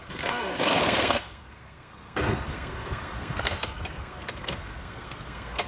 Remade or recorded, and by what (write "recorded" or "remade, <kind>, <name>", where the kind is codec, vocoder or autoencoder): remade, codec, SNAC